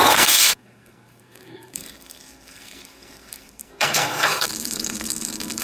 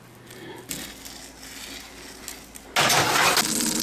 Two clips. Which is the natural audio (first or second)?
second